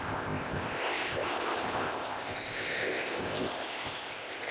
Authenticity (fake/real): fake